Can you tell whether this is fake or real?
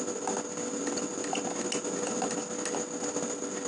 real